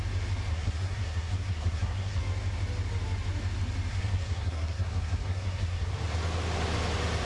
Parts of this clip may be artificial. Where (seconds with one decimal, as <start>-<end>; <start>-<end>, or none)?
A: 0.5-2.2; 3.9-5.9